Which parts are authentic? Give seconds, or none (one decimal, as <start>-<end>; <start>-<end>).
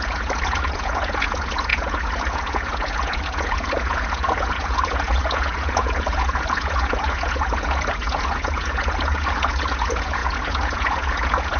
none